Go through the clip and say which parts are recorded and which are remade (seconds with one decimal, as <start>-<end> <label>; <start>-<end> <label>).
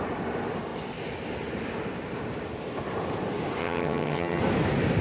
0.0-3.6 recorded; 3.6-4.4 remade; 4.4-5.0 recorded